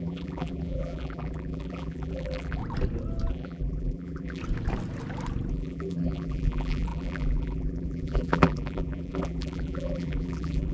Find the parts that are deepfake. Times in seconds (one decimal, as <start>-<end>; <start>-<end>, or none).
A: 0.0-2.6; 3.3-4.4; 5.5-10.7